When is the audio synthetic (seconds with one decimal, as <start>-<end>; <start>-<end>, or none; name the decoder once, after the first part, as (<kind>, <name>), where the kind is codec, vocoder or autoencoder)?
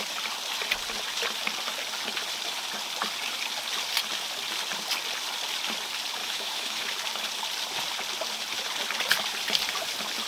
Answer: 6.2-6.9 (autoencoder, DAC-VAE)